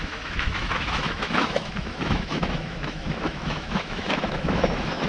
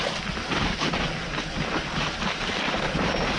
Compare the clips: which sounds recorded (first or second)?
second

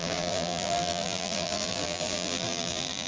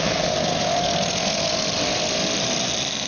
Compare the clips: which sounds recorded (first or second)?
second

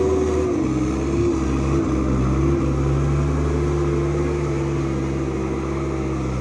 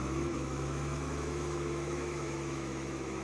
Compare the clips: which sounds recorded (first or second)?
first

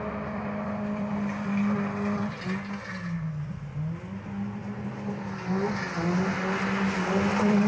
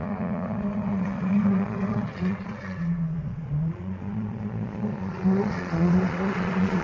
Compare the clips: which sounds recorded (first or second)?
first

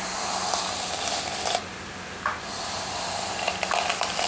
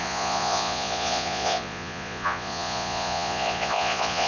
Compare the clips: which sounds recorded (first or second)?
first